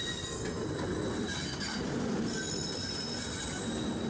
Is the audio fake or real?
real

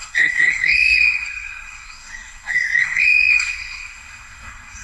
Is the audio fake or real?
fake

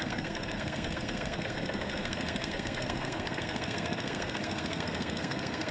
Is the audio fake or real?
fake